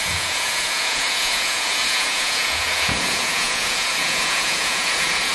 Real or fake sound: fake